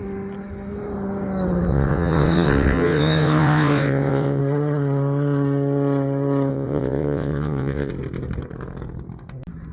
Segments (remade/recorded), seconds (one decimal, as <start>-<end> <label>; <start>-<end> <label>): 0.0-1.7 recorded; 1.7-4.4 remade; 4.4-6.5 recorded; 6.5-7.9 remade; 7.9-9.7 recorded